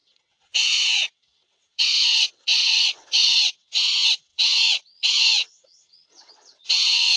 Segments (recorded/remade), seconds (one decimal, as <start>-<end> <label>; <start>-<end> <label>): 0.0-7.2 remade